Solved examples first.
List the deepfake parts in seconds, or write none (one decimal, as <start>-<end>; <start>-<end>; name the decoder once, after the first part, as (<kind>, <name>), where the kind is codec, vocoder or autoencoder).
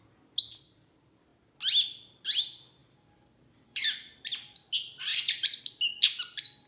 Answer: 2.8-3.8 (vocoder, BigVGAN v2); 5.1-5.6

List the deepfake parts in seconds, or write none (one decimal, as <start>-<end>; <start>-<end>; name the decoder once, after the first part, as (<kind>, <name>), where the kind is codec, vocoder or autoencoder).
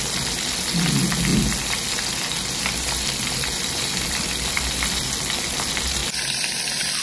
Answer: 1.3-5.2 (vocoder, BigVGAN v2); 6.0-7.0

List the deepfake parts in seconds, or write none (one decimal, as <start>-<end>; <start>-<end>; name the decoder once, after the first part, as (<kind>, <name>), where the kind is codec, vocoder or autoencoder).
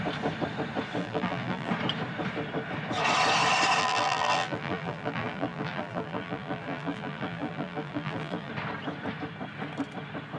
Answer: 1.0-1.7 (vocoder, BigVGAN v2); 3.8-8.5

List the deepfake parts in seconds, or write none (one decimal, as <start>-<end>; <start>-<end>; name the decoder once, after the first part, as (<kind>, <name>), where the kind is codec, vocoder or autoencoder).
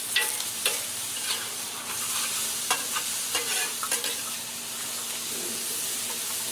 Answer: 0.0-3.9 (vocoder, BigVGAN v2)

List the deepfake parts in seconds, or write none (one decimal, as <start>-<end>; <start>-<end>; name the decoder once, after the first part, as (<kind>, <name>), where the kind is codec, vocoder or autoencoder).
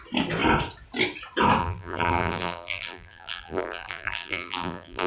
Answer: 1.6-5.1 (vocoder, BigVGAN v2)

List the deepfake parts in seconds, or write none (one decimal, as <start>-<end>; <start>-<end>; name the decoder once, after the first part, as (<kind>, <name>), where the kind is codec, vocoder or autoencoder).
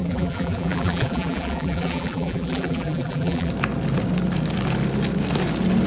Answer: 0.0-3.5 (vocoder, BigVGAN v2)